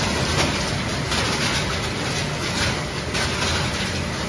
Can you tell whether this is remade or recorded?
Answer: recorded